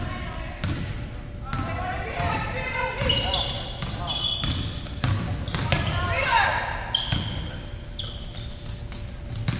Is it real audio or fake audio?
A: real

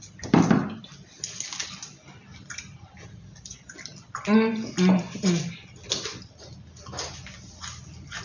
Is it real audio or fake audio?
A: real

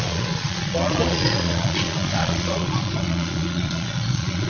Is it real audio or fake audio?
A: fake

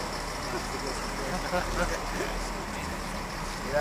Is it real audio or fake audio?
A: real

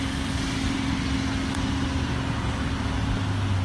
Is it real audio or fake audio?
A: real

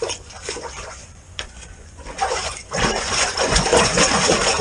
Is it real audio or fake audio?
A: fake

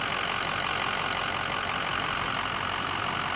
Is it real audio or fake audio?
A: real